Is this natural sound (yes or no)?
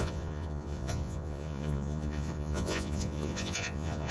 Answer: no